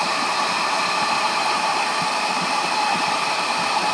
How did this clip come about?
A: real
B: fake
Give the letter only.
B